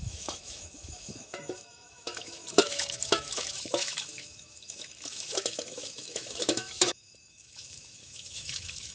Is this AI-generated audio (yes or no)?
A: yes